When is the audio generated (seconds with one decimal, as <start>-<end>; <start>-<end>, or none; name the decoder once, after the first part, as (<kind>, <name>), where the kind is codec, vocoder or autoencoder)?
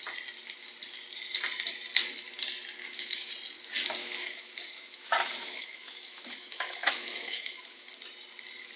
2.8-3.3 (autoencoder, DAC-VAE); 4.0-7.9